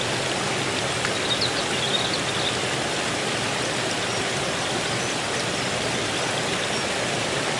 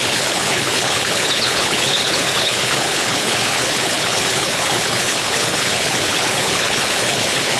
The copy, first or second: second